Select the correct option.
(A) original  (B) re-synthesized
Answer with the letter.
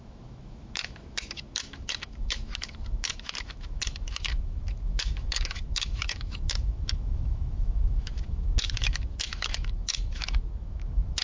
B